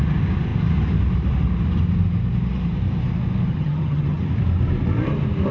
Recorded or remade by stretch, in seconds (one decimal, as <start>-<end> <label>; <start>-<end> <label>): 0.0-3.5 recorded; 3.5-4.3 remade; 4.3-5.5 recorded